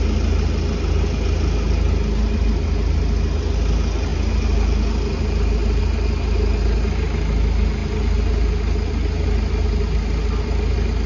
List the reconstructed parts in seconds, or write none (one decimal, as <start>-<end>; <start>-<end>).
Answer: none